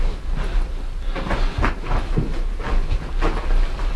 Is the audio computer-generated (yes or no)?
no